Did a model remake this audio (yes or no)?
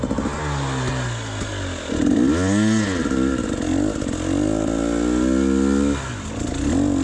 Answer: no